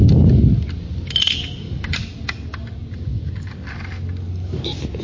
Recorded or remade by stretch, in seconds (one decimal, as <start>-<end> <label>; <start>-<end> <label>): 0.0-5.0 recorded